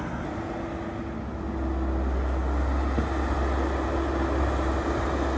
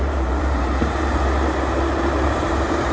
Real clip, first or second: first